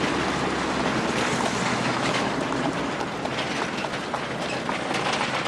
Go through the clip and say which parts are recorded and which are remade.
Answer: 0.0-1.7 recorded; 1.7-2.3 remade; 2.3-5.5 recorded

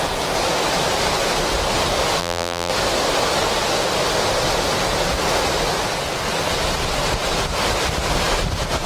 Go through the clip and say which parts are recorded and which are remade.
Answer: 0.0-2.2 recorded; 2.2-2.7 remade; 2.7-8.9 recorded

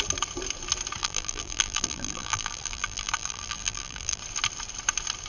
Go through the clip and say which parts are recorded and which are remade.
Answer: 0.0-1.0 recorded; 1.0-4.2 remade; 4.2-5.3 recorded

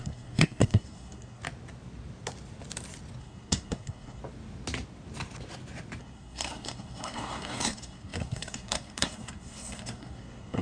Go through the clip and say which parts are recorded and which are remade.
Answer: 0.0-1.4 remade; 1.4-3.2 recorded; 3.2-4.2 remade; 4.2-6.0 recorded; 6.0-10.6 remade